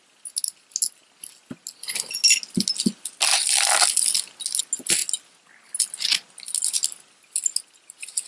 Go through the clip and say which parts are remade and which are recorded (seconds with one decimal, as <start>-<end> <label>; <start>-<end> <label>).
0.0-8.3 recorded